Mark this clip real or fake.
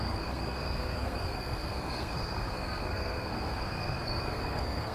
fake